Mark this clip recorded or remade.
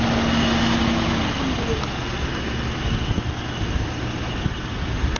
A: recorded